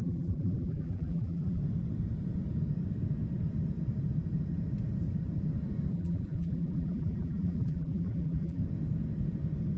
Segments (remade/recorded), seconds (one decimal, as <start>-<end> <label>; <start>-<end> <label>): 0.0-1.6 remade; 1.6-5.9 recorded; 5.9-8.6 remade; 8.6-9.8 recorded

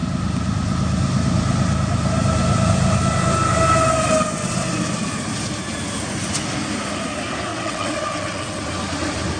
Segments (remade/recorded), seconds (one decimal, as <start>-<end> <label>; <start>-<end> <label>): 0.0-7.5 recorded; 7.5-8.6 remade; 8.6-9.4 recorded

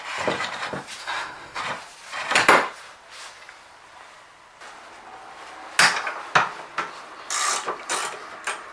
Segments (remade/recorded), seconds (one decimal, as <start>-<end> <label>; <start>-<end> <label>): 0.0-1.0 recorded; 1.0-1.6 remade; 1.6-8.7 recorded